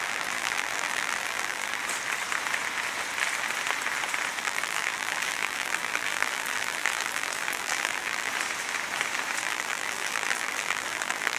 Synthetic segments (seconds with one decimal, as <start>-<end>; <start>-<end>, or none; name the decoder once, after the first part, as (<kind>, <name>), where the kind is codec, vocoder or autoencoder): 0.0-1.8 (vocoder, BigVGAN v2); 4.4-8.3; 9.4-11.4